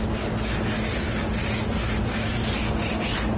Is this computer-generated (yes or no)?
no